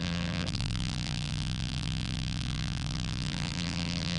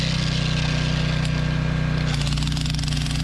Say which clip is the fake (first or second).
first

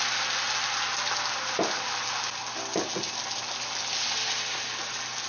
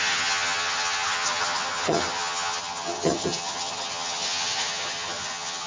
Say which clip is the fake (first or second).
second